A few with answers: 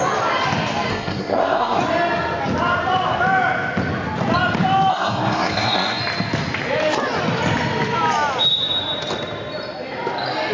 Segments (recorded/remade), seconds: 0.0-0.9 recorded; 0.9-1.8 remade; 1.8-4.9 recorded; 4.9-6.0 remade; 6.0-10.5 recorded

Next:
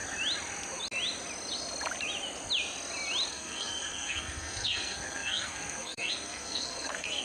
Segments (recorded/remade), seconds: 0.0-3.3 recorded; 3.3-7.2 remade

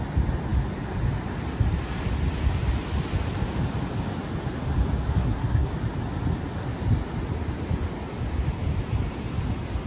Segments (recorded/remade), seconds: 0.0-5.1 recorded; 5.1-5.7 remade; 5.7-9.9 recorded

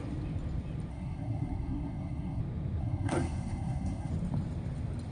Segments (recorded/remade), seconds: 0.0-0.9 recorded; 0.9-2.4 remade; 2.4-2.8 recorded; 2.8-4.1 remade; 4.1-5.1 recorded

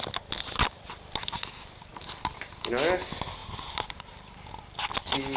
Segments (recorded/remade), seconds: 0.0-5.4 recorded

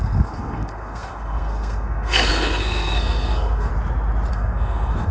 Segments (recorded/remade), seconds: 0.0-3.7 remade; 3.7-4.3 recorded; 4.3-5.1 remade